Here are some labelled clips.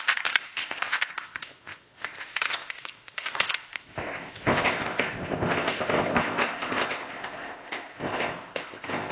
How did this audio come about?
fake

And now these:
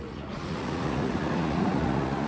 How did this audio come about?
fake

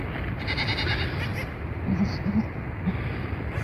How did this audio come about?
fake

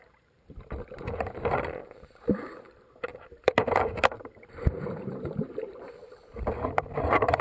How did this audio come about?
fake